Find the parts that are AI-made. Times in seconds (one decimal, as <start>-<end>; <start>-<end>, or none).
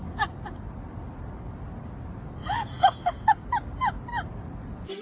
none